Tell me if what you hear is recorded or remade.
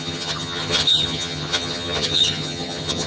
remade